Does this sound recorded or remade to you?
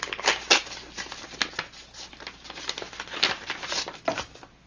recorded